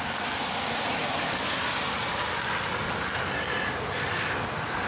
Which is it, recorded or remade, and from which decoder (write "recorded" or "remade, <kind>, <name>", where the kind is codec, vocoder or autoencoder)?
recorded